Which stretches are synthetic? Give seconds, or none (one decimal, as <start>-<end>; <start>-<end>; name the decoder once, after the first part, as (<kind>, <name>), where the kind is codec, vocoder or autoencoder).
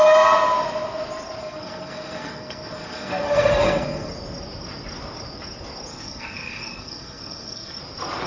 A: 1.4-4.1 (codec, SNAC); 5.9-7.8